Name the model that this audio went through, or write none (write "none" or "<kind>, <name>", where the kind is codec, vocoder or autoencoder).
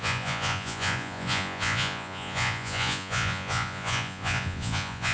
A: vocoder, Vocos